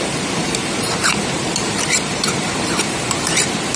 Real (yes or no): no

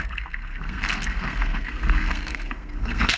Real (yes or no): no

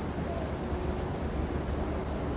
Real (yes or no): yes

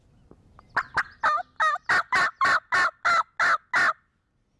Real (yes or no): yes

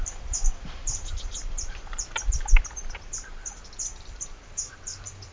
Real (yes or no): no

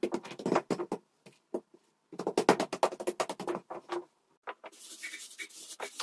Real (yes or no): yes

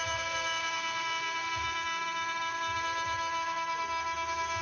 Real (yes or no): yes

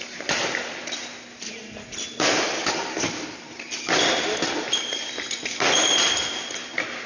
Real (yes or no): yes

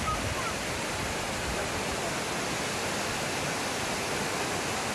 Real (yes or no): yes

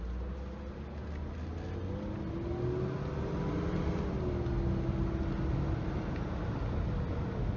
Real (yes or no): yes